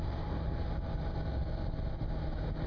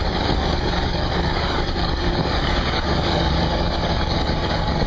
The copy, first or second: second